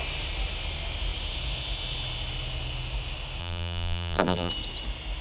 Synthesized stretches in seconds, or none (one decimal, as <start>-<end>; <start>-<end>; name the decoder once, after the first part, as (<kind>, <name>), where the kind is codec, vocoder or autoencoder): 3.4-4.5 (vocoder, BigVGAN v2)